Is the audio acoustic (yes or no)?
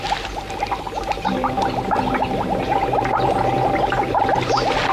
yes